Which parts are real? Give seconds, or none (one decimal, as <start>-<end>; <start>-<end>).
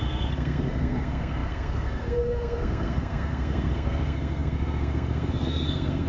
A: none